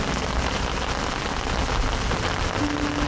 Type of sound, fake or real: real